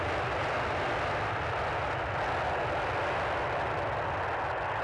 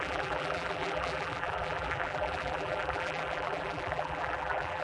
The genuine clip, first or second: first